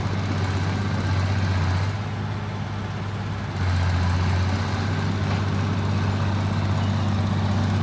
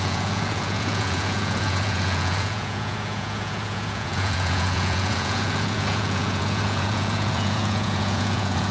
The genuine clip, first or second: first